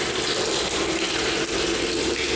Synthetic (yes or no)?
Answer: no